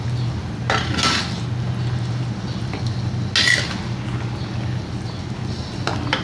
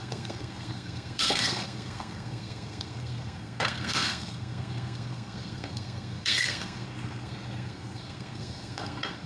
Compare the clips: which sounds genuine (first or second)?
first